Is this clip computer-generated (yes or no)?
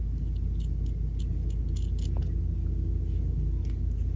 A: no